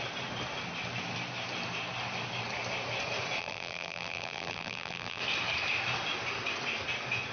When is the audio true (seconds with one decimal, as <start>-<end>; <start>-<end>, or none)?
0.0-3.4; 5.2-7.3